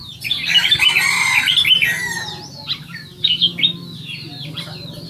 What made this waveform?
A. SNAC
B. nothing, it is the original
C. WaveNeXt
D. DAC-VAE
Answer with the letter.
B